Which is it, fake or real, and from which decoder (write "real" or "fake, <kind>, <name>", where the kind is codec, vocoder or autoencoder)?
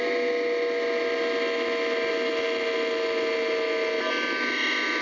real